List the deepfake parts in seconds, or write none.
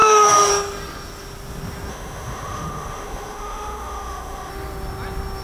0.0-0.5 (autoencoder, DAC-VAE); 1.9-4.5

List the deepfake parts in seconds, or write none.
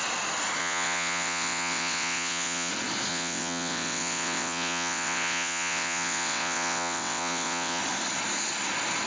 0.6-2.7 (vocoder, WaveNeXt); 3.1-7.8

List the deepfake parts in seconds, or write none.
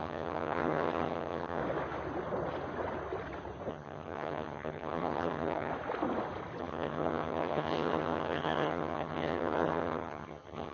0.0-1.6 (vocoder, HiFi-GAN); 3.7-5.7; 6.6-10.7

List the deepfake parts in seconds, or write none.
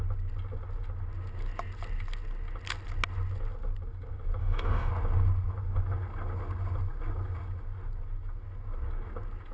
4.4-4.9 (autoencoder, DAC-VAE)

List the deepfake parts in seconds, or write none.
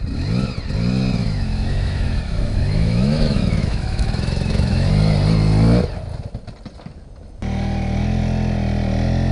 1.2-4.9 (autoencoder, DAC-VAE)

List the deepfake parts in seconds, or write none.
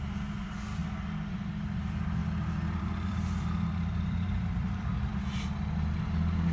2.2-5.1 (vocoder, BigVGAN v2)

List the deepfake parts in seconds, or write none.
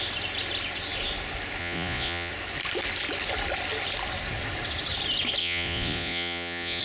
1.6-2.3 (vocoder, Vocos); 5.4-6.8